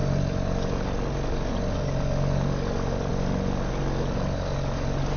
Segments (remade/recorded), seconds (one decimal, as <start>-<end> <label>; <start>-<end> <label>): 0.0-5.2 recorded